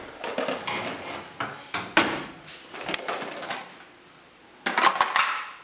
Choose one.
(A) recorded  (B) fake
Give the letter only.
A